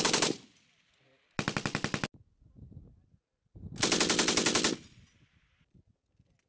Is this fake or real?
real